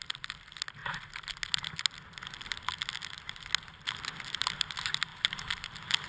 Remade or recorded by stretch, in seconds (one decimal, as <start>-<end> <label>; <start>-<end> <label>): 0.0-6.1 recorded